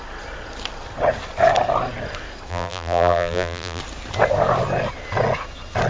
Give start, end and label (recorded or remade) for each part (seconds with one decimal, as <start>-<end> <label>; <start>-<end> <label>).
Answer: 0.0-2.5 recorded; 2.5-3.8 remade; 3.8-5.9 recorded